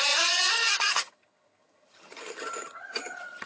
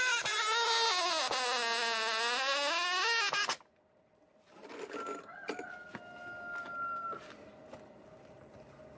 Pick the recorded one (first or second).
second